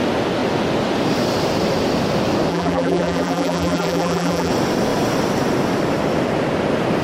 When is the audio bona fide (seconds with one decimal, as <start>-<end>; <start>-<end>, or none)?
0.0-2.5; 4.5-7.0